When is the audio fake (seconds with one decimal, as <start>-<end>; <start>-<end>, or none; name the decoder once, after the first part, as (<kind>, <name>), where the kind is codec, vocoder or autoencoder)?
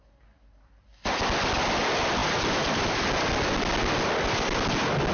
none